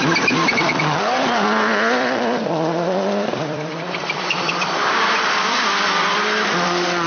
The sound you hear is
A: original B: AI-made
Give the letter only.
B